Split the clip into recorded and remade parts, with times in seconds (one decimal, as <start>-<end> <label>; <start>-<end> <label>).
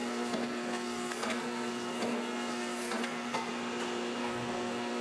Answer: 0.0-3.5 remade; 3.5-4.2 recorded; 4.2-5.0 remade